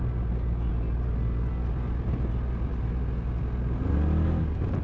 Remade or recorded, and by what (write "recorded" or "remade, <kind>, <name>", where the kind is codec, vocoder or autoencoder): recorded